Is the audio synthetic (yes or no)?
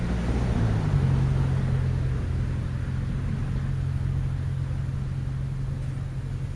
no